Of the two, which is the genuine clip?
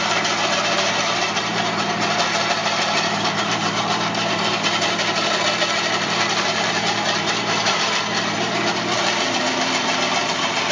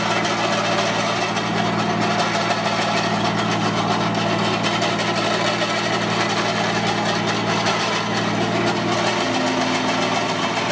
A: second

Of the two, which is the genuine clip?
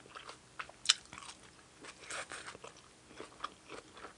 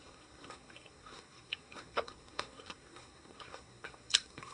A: first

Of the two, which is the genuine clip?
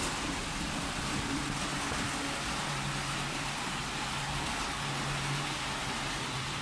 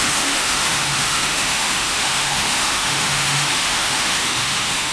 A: first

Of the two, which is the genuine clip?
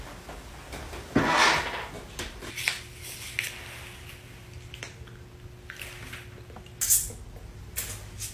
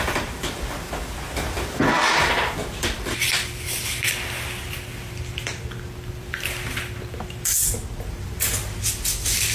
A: first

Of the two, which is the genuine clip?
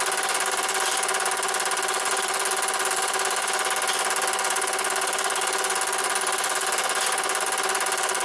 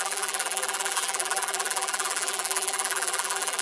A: first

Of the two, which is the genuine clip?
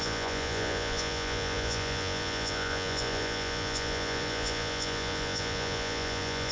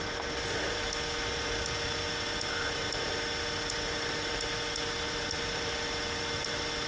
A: second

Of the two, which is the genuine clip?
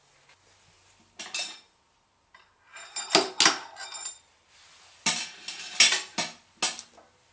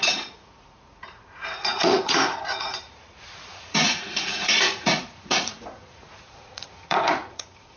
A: first